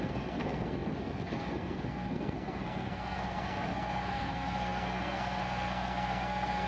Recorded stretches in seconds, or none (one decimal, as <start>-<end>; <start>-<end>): none